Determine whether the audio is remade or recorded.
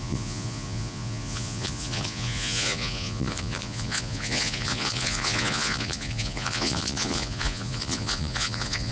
remade